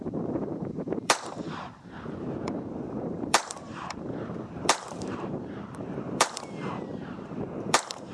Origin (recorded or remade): remade